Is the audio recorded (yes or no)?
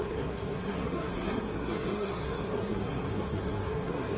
no